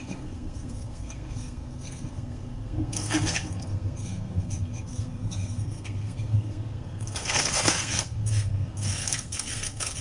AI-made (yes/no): yes